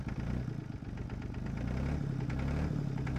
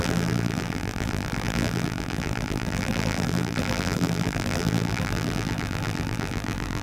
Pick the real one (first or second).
first